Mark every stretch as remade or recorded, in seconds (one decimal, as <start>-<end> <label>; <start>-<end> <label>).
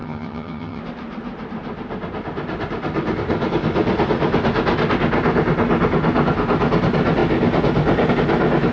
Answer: 0.0-0.8 remade; 0.8-8.7 recorded